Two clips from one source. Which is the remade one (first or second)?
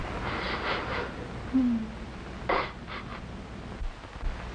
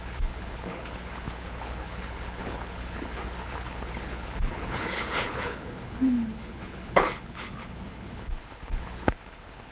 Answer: second